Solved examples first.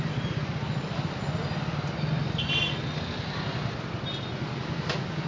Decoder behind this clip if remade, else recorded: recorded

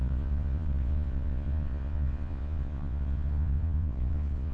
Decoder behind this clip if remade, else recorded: remade, vocoder, Vocos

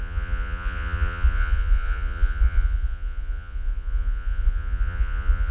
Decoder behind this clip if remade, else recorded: remade, vocoder, Vocos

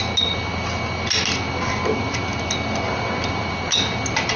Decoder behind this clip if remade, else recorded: recorded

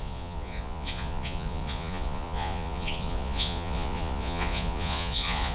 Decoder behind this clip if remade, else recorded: remade, vocoder, Vocos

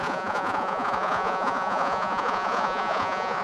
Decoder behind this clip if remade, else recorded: remade, vocoder, Vocos